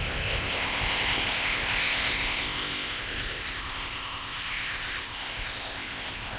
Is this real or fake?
fake